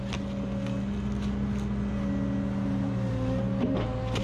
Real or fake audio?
real